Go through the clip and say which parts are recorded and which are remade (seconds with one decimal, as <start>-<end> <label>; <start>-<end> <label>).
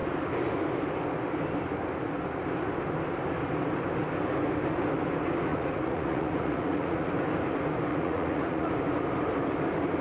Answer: 0.0-5.5 recorded; 5.5-7.1 remade; 7.1-7.9 recorded; 7.9-8.7 remade; 8.7-10.0 recorded